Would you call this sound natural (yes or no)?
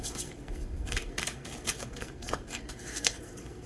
no